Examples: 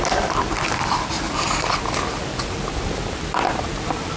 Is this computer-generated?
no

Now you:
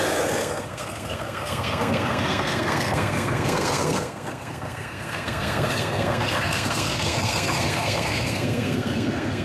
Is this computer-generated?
yes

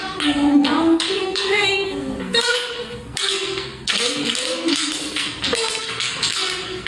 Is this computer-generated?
yes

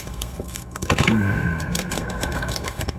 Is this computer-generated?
yes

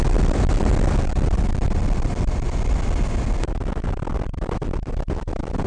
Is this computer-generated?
no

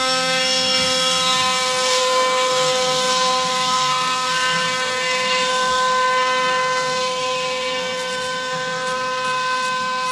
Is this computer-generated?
yes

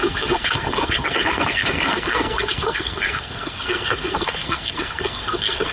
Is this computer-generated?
yes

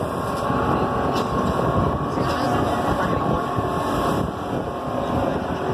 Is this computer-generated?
no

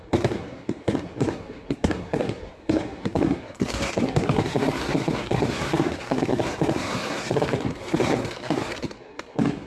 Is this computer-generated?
yes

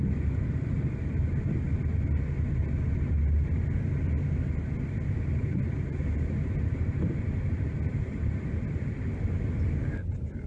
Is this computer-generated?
no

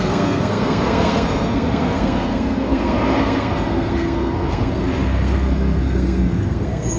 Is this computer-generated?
yes